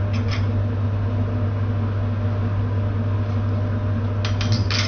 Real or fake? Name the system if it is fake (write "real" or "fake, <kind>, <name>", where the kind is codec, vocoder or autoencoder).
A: real